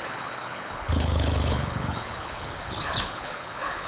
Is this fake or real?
fake